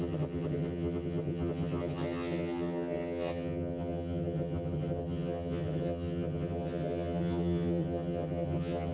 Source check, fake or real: fake